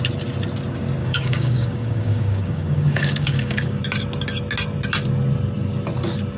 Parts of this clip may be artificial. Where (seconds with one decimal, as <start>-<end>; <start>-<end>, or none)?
1.0-3.8